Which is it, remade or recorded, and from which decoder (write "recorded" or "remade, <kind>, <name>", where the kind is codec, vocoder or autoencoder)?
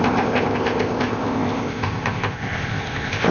remade, codec, ZipCodec